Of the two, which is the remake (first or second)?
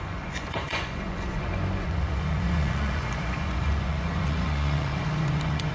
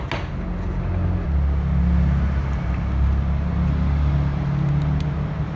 first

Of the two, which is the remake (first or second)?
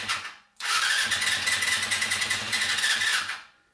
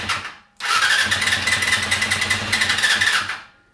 first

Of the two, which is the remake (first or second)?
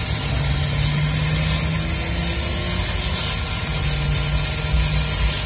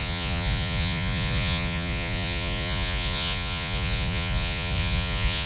second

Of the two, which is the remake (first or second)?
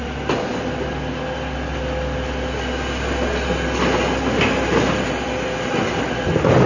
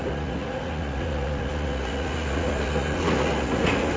second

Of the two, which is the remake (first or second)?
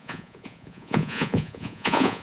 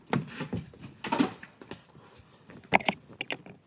first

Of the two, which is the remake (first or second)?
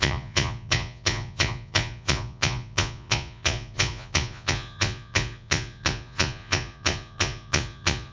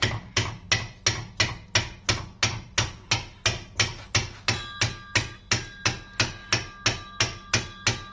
first